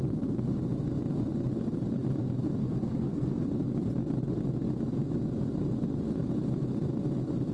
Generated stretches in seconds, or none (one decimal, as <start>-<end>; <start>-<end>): 2.6-3.4